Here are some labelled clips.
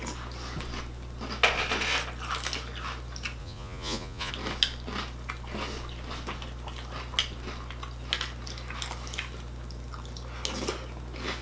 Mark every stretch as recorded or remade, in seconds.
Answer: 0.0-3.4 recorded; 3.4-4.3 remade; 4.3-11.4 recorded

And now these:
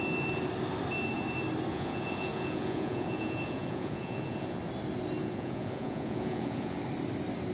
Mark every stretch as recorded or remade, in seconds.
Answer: 0.0-1.7 recorded; 1.7-4.6 remade; 4.6-5.2 recorded; 5.2-6.8 remade; 6.8-7.5 recorded

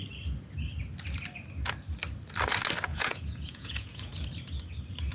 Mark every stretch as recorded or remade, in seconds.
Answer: 0.0-2.9 recorded; 2.9-4.1 remade; 4.1-5.1 recorded

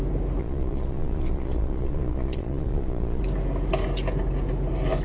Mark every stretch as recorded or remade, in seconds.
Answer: 0.0-0.4 recorded; 0.4-3.2 remade; 3.2-5.0 recorded

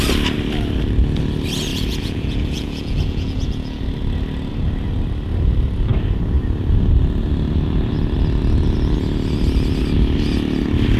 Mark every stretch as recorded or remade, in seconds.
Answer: 0.0-1.7 recorded; 1.7-3.8 remade; 3.8-11.0 recorded

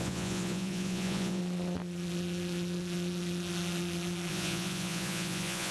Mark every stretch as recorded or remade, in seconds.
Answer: 0.0-1.4 remade; 1.4-4.3 recorded; 4.3-5.7 remade